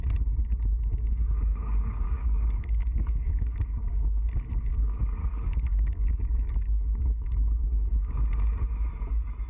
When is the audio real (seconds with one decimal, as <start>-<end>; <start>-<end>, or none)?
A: 0.0-1.5; 3.3-5.2; 8.1-9.5